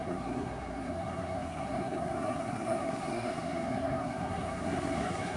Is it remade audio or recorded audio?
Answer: remade